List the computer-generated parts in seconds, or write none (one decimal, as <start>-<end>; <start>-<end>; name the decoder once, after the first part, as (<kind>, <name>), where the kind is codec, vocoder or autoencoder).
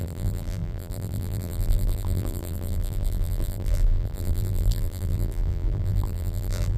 0.0-6.8 (vocoder, BigVGAN v2)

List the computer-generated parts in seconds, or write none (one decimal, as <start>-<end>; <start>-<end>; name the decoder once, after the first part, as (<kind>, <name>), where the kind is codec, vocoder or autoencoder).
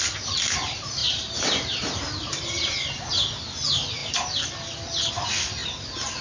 1.0-3.1 (vocoder, BigVGAN v2); 5.6-6.2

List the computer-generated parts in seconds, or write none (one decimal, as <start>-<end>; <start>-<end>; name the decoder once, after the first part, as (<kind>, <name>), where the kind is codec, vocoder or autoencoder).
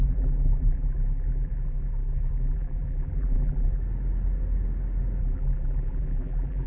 0.0-3.8 (vocoder, BigVGAN v2); 5.2-6.7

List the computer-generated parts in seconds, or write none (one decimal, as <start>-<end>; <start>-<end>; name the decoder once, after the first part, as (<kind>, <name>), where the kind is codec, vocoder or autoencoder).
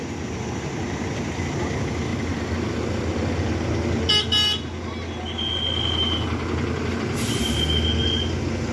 none